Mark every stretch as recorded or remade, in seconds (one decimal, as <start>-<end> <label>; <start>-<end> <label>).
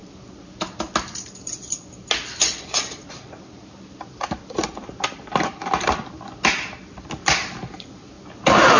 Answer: 0.0-2.7 recorded; 2.7-4.6 remade; 4.6-6.7 recorded; 6.7-8.8 remade